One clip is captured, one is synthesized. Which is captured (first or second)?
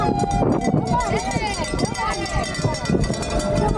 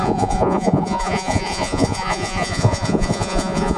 first